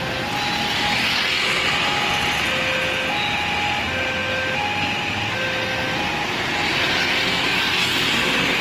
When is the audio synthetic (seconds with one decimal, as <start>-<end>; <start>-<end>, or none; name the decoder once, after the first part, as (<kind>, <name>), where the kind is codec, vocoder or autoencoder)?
none